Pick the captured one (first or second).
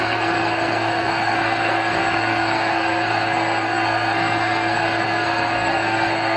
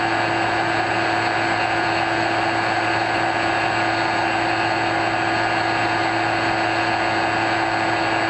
second